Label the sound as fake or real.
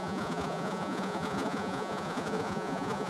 fake